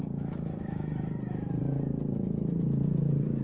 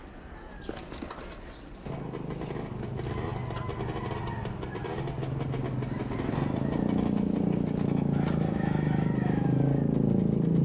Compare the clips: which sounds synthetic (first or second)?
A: first